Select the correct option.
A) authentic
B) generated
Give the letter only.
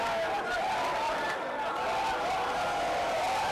A